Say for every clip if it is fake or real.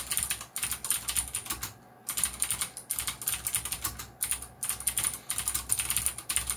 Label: real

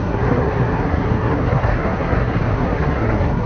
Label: fake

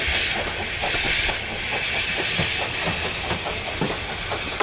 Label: real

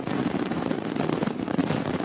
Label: fake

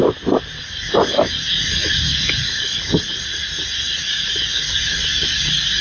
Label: real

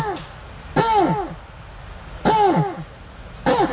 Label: real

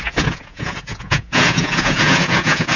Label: fake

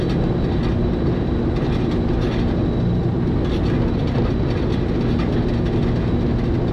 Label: real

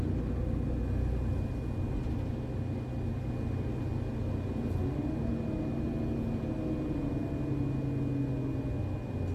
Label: real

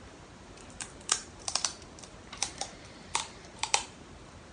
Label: fake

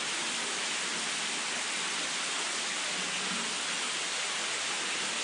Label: real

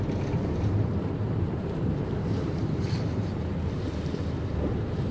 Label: fake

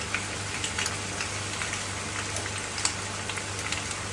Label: real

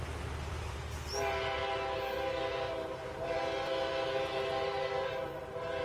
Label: fake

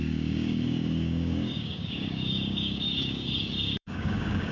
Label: fake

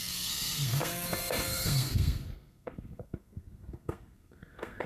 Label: fake